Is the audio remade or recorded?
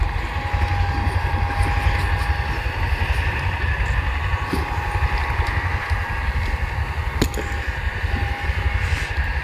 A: recorded